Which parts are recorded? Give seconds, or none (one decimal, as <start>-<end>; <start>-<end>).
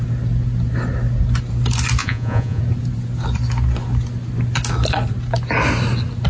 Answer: 0.0-2.0; 2.6-6.3